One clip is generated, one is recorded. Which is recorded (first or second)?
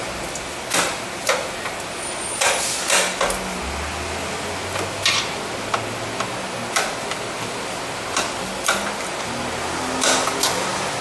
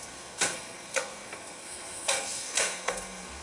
first